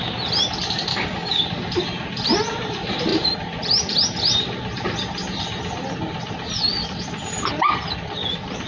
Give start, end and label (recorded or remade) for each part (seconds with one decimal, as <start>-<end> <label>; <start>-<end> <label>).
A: 0.0-0.9 recorded; 0.9-1.4 remade; 1.4-8.7 recorded